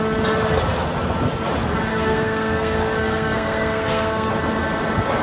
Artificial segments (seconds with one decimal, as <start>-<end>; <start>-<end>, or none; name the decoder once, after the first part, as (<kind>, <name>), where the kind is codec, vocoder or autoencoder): 1.9-4.3 (codec, SNAC)